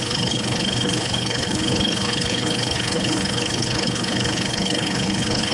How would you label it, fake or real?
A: fake